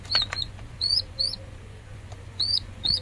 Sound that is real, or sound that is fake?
fake